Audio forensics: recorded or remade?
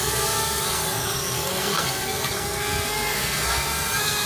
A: remade